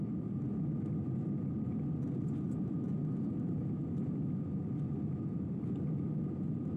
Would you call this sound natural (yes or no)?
yes